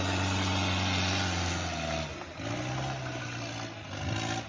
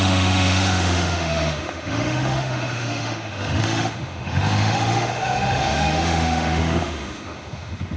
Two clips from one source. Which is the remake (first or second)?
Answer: second